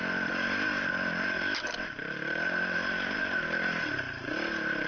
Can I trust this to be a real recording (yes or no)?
yes